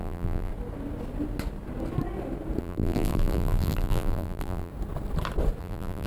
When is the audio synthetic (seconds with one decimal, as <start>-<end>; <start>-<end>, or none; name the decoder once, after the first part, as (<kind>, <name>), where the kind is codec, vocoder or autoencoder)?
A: 0.0-0.5 (vocoder, BigVGAN v2); 2.6-4.7; 5.6-6.1